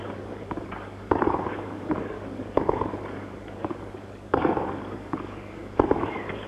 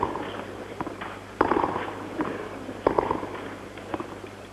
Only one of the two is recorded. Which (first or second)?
second